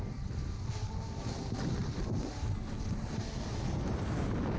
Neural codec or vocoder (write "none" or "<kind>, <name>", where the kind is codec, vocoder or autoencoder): none